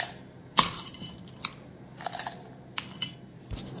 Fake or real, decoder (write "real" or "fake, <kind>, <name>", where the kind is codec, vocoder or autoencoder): real